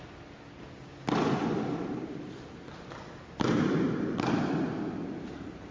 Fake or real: real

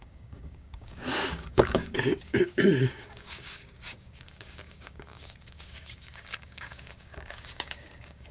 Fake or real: fake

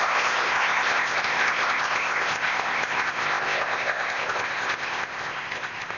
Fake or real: fake